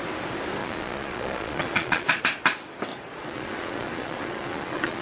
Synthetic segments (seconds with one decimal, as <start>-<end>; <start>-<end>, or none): 0.6-2.2; 2.9-5.0